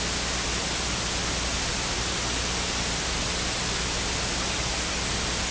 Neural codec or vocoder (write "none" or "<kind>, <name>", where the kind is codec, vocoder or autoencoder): none